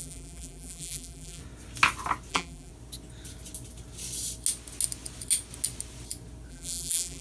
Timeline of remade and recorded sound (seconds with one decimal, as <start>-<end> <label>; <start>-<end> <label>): 0.0-1.4 remade; 1.4-2.3 recorded; 2.3-2.7 remade; 2.7-6.5 recorded; 6.5-7.2 remade